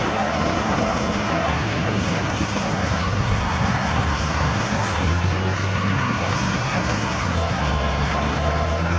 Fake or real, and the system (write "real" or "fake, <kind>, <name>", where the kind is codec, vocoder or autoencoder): fake, codec, SNAC